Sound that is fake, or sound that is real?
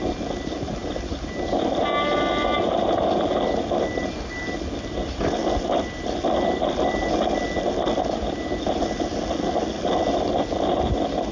real